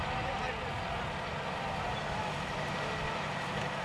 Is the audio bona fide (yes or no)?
yes